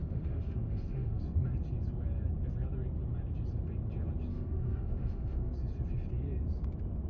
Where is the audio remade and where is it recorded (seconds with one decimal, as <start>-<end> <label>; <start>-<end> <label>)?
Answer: 0.0-1.2 remade; 1.2-4.3 recorded; 4.3-5.5 remade; 5.5-7.1 recorded